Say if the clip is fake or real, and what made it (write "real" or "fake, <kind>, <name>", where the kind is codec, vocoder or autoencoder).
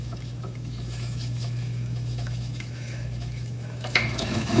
fake, autoencoder, DAC-VAE